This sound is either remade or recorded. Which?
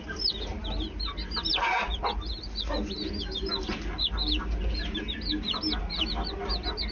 recorded